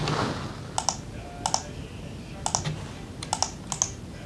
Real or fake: real